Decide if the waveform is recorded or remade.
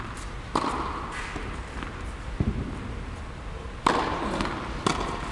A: recorded